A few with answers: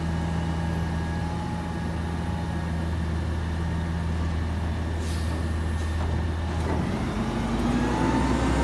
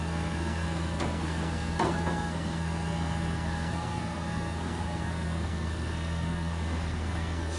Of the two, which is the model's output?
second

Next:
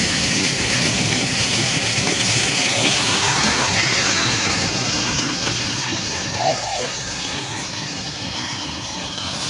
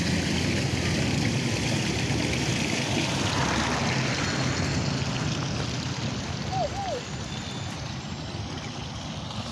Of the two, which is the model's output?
first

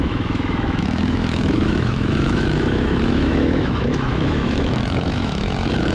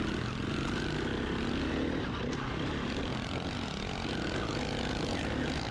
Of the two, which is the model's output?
first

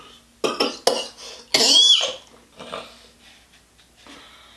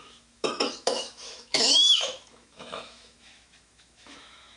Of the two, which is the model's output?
second